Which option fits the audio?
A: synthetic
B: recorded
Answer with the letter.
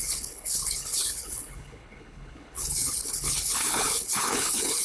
A